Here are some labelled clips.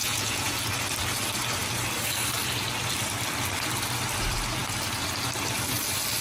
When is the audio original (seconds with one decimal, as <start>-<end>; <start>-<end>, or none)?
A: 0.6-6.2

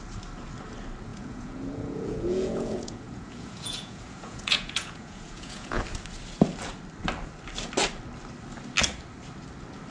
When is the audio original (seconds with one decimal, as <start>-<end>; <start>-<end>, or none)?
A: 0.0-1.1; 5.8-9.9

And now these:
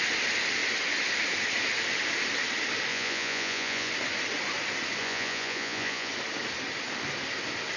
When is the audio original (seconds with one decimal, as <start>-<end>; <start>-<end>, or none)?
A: 0.0-2.9; 3.9-5.0; 6.1-7.8

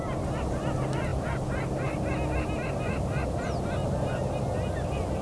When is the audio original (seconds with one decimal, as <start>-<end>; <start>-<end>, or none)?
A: 0.0-5.2